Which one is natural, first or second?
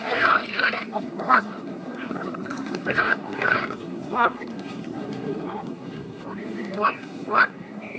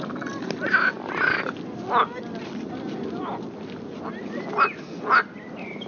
second